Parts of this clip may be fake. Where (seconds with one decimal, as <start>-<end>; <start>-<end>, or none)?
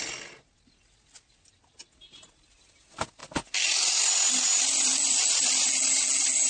none